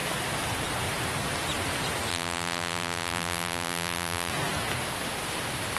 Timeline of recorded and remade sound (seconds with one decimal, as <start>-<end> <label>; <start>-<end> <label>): 0.0-2.1 recorded; 2.1-4.3 remade; 4.3-5.8 recorded